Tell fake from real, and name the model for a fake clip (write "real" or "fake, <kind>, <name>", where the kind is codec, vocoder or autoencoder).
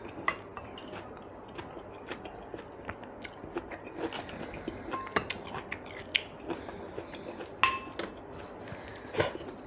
real